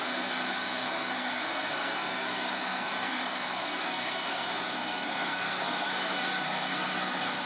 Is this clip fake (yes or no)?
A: yes